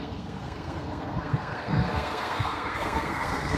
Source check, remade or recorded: remade